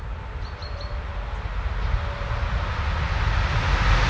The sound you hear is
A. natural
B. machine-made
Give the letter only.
A